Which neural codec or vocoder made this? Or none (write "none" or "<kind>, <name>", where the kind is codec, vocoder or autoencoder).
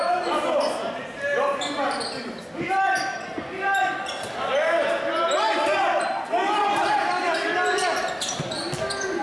none